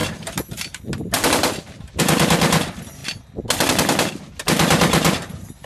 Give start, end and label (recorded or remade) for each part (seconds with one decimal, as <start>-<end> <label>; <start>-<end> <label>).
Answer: 0.0-3.0 remade; 3.0-4.2 recorded; 4.2-5.7 remade